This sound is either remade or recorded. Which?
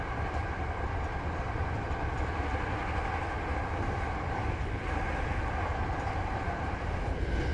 recorded